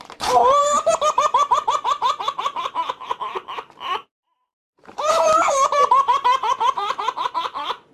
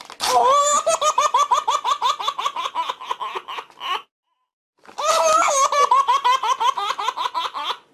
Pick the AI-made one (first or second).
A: first